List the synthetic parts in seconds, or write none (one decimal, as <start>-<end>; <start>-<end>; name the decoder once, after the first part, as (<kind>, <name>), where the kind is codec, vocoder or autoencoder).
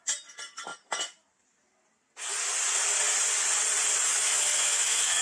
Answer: 4.1-5.2 (autoencoder, DAC-VAE)